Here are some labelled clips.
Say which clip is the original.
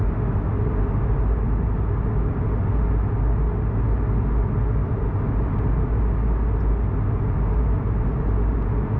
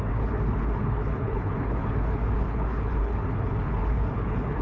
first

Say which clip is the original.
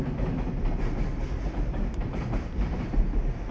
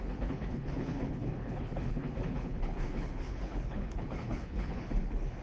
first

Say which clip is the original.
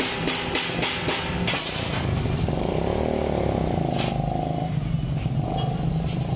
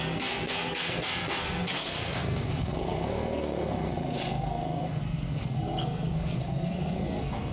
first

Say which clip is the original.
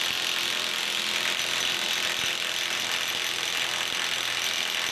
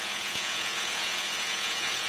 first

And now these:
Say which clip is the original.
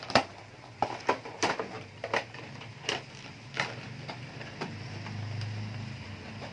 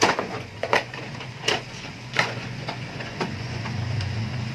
first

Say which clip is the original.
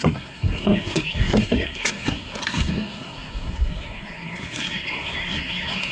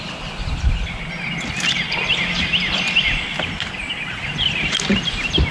second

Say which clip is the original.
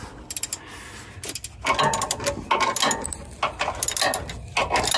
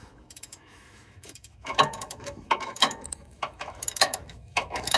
first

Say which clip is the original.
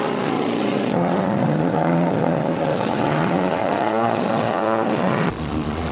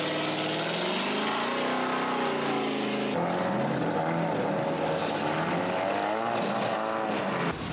second